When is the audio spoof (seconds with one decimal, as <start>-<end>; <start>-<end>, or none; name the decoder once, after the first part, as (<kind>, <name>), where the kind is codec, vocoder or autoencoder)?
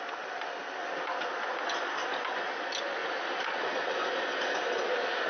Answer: none